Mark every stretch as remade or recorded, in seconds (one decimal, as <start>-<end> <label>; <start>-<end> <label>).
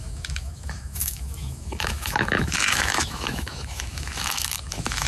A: 0.0-5.1 remade